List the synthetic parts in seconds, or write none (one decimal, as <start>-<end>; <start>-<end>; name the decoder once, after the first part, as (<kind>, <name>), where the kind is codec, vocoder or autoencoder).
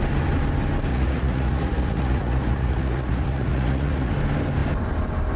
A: 0.9-4.1 (vocoder, Vocos)